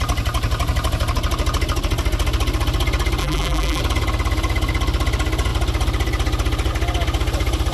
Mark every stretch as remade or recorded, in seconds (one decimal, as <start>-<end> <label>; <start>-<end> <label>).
0.0-3.2 recorded; 3.2-3.8 remade; 3.8-7.7 recorded